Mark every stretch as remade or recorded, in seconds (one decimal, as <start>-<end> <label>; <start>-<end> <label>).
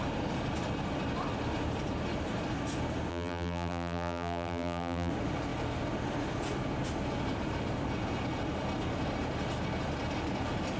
0.0-3.1 recorded; 3.1-5.1 remade; 5.1-10.8 recorded